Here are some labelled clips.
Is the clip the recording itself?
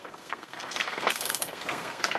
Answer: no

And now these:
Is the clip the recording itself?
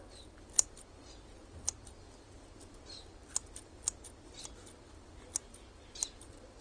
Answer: yes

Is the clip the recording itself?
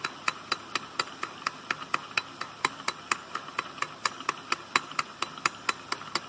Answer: yes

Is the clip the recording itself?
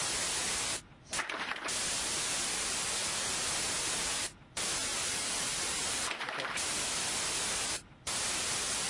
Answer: yes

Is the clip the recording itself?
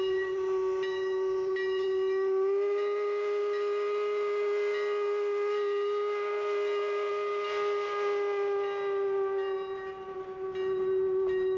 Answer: yes